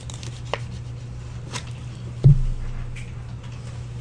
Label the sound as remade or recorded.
recorded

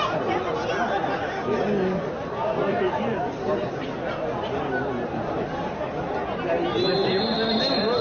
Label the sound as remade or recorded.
recorded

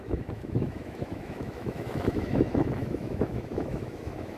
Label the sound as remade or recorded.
remade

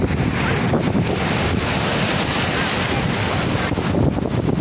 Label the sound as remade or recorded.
recorded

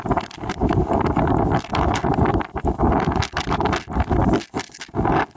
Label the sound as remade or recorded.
recorded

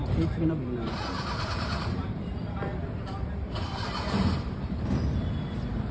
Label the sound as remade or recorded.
remade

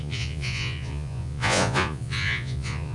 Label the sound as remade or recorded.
remade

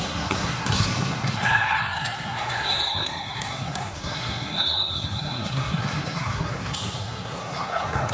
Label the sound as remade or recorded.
remade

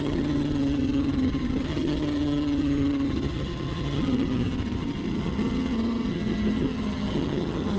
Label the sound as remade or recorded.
remade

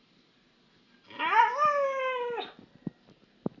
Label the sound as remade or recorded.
recorded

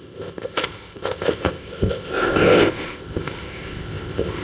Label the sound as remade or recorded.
remade